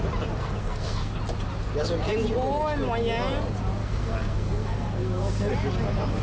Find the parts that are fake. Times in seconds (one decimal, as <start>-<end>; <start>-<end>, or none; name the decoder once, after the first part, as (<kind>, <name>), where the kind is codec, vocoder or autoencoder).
0.4-1.2 (codec, SNAC); 3.8-5.5